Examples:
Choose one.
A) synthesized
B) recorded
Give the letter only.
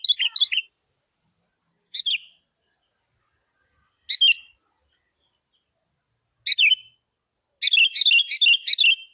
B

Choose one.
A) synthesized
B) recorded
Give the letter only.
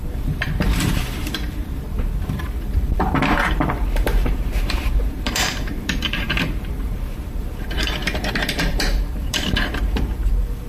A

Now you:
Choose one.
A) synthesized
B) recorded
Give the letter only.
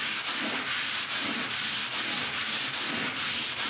B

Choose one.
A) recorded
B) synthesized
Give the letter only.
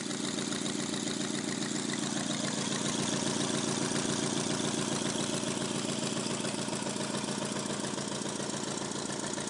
A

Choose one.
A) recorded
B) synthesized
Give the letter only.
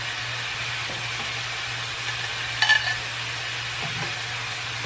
A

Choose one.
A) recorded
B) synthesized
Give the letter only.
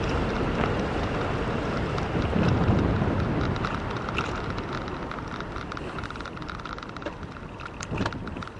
A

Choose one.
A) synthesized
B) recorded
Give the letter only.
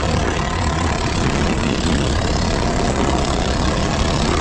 A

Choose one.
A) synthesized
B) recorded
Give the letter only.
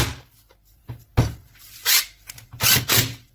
B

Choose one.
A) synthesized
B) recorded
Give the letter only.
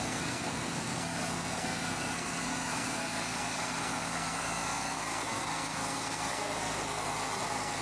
A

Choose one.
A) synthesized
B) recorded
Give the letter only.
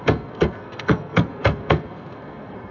A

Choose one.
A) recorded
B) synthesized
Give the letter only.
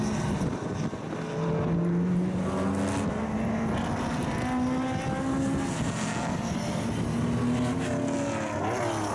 A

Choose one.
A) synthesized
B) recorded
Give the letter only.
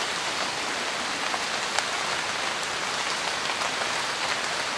B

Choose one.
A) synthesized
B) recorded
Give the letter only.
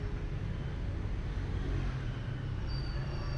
B